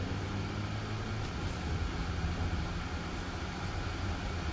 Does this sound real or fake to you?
real